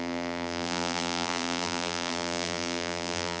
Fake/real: fake